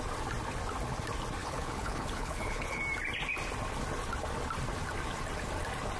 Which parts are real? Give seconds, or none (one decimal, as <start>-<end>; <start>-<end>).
0.0-1.4; 2.8-6.0